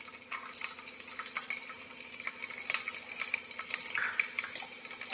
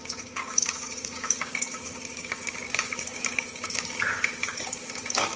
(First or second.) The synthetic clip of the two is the second